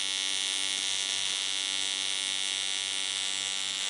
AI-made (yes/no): no